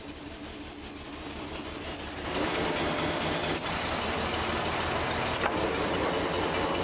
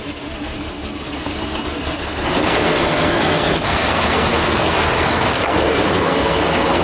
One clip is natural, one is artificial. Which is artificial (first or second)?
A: second